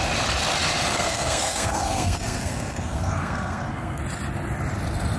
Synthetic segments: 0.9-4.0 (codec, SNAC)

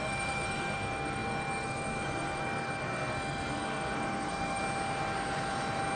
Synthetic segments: 0.0-4.6 (codec, SNAC)